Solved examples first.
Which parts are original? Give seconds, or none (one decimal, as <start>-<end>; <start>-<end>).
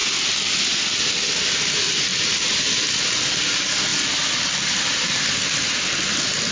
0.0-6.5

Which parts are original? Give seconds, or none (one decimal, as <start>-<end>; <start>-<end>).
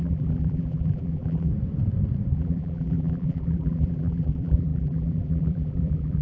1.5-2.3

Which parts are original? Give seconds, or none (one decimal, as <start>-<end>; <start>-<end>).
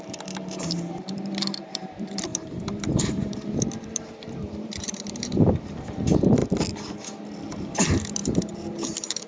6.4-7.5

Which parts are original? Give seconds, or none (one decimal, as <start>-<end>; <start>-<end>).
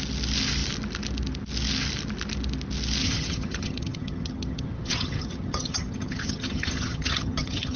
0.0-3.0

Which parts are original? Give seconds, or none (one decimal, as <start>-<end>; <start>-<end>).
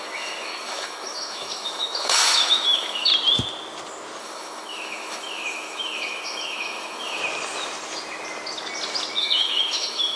3.1-4.2; 7.2-9.2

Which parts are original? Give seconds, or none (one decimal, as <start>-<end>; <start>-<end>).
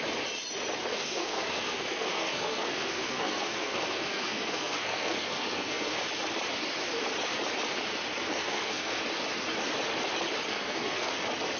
0.0-0.9; 6.0-8.3; 9.0-10.5; 11.1-11.6